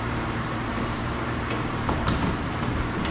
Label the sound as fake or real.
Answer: fake